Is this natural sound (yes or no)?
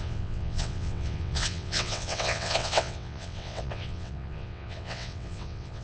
no